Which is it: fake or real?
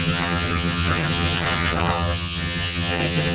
fake